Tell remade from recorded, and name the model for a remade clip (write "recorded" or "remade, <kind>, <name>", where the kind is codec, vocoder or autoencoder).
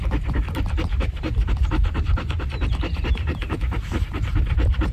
remade, vocoder, BigVGAN v2